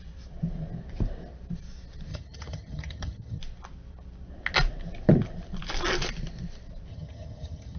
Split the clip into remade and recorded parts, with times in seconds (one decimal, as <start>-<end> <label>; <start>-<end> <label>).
0.0-2.1 recorded; 2.1-3.4 remade; 3.4-6.9 recorded; 6.9-7.8 remade